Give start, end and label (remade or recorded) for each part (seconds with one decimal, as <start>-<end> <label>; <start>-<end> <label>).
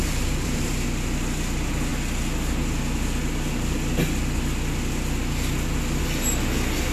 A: 0.0-0.7 remade; 0.7-6.9 recorded